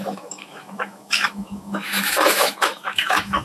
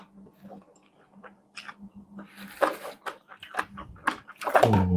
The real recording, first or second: second